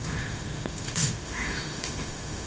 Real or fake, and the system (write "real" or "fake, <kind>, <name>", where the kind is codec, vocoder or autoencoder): fake, autoencoder, DAC-VAE